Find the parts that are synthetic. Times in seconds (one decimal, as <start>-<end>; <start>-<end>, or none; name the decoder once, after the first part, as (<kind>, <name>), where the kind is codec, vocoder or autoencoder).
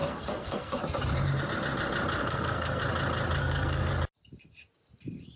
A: 0.0-0.8 (codec, SNAC); 2.2-2.8; 3.4-3.9